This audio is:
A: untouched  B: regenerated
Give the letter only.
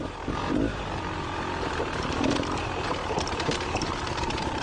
A